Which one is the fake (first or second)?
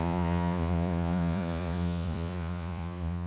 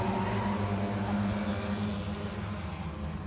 first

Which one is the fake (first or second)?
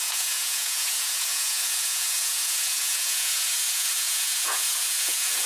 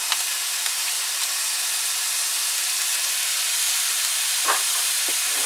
first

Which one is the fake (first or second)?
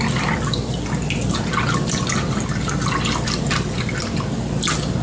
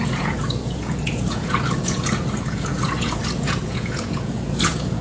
second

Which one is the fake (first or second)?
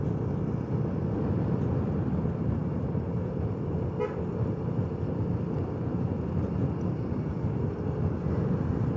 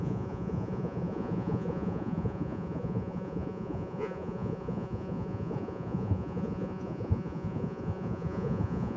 second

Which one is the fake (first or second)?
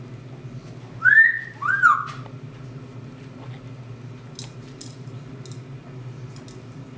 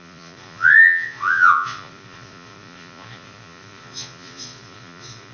second